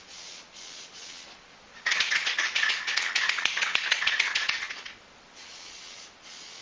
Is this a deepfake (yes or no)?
yes